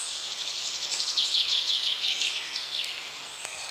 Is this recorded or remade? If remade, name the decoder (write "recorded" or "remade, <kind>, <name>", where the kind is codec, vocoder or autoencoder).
remade, codec, SNAC